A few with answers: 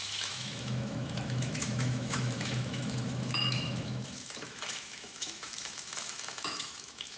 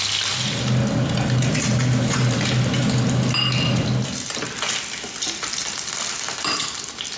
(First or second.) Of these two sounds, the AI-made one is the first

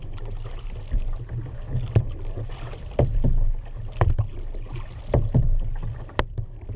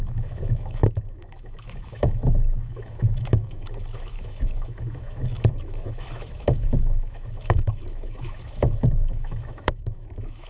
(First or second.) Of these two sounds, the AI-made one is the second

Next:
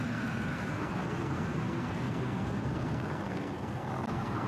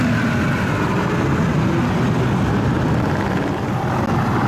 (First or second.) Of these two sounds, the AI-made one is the first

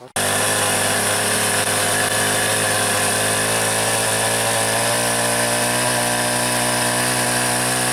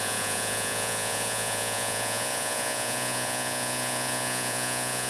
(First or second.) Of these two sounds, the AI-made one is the second